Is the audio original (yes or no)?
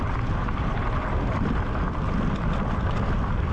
yes